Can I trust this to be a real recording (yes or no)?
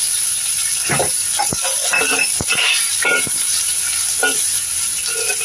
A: yes